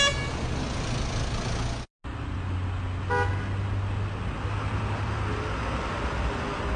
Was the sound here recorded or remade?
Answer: recorded